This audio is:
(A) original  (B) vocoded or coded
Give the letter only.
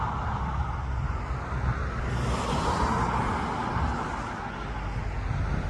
A